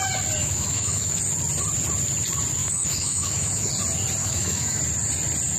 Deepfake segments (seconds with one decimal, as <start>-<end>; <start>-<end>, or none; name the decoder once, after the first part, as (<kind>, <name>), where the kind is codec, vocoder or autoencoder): 0.4-1.2 (autoencoder, DAC-VAE); 2.6-3.7; 4.2-4.8